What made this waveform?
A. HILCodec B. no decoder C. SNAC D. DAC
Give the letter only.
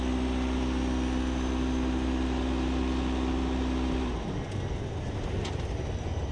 B